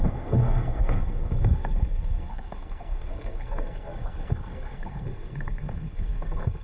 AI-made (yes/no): yes